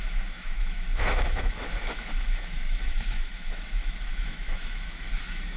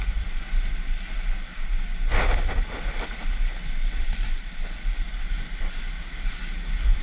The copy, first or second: first